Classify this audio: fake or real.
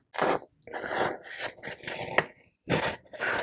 real